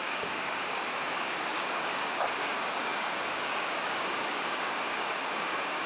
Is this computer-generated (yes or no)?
yes